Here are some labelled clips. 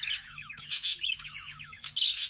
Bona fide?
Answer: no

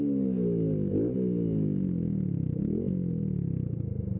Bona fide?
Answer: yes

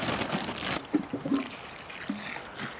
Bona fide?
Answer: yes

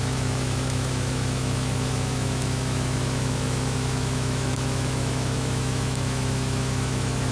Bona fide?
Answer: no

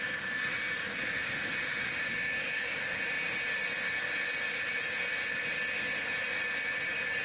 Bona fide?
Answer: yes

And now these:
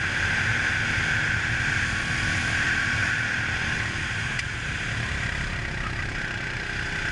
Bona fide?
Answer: yes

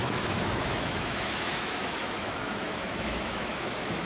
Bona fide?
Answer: no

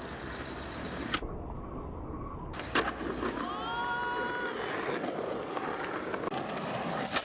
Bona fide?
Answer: yes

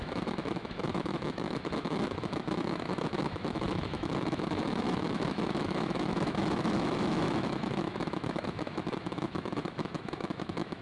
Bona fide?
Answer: no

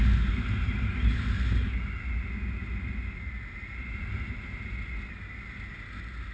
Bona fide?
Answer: yes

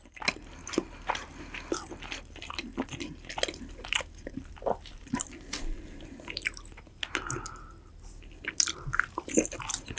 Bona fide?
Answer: yes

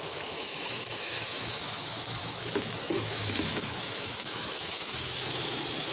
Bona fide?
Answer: no